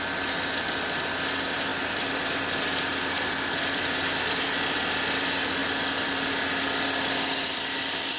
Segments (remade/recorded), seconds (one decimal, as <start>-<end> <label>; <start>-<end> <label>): 0.0-8.2 recorded